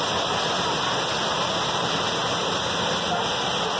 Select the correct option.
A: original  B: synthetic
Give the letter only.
A